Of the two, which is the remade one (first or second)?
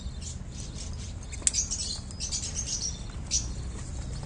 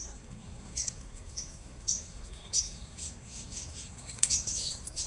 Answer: second